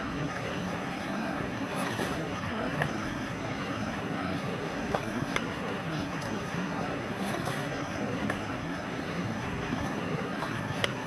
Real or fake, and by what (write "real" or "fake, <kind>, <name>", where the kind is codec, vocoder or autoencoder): fake, codec, SNAC